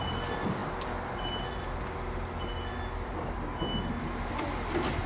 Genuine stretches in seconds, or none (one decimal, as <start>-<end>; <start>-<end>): 0.0-5.1